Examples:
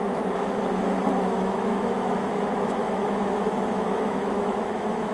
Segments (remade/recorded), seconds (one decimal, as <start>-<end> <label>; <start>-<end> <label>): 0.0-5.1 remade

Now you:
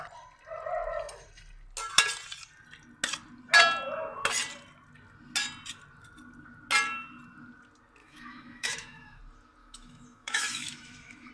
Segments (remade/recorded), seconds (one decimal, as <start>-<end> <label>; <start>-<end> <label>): 0.0-8.0 recorded; 8.0-9.2 remade; 9.2-9.6 recorded; 9.6-11.3 remade

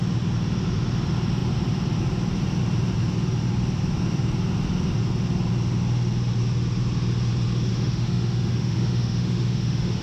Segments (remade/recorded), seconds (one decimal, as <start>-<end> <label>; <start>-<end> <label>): 0.0-7.7 recorded; 7.7-10.0 remade

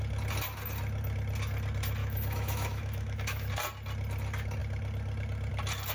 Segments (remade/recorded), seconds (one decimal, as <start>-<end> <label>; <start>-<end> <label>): 0.0-2.0 recorded; 2.0-3.5 remade; 3.5-5.9 recorded

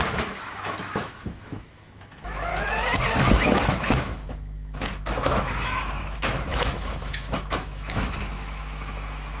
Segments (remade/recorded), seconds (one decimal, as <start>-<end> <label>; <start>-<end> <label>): 0.0-2.5 remade; 2.5-3.2 recorded; 3.2-9.4 remade

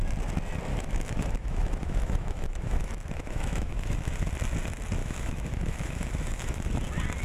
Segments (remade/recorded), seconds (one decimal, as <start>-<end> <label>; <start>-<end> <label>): 0.0-0.7 recorded; 0.7-4.1 remade; 4.1-5.0 recorded; 5.0-6.7 remade; 6.7-7.2 recorded

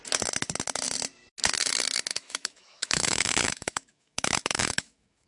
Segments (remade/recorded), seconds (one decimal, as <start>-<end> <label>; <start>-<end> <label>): 0.0-2.1 recorded; 2.1-5.3 remade

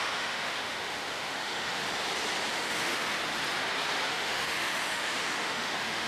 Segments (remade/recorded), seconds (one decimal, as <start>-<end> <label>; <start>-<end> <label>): 0.0-1.8 remade; 1.8-2.5 recorded; 2.5-3.2 remade; 3.2-4.1 recorded; 4.1-6.1 remade